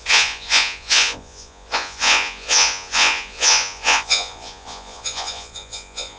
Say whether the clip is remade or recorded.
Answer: remade